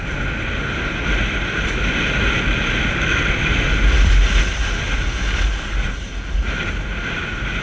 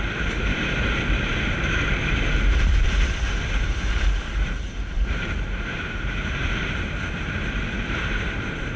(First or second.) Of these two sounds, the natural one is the first